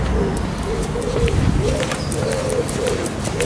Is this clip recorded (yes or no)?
yes